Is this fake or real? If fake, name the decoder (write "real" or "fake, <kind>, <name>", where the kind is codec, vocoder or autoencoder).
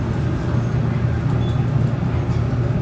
real